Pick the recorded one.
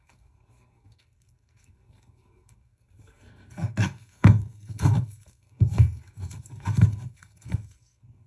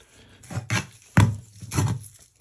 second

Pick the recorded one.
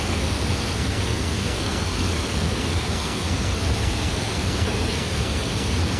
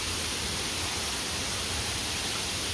second